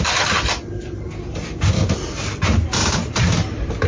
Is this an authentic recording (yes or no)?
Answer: yes